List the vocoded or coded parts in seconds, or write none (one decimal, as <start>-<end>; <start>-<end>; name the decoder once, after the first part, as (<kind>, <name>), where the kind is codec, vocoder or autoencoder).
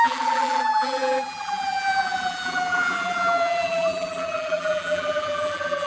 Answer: 0.0-5.9 (vocoder, BigVGAN v2)